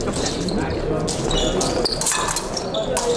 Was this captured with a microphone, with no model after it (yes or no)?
yes